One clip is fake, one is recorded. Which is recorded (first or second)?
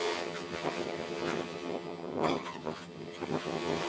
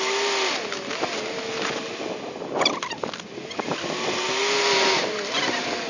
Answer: second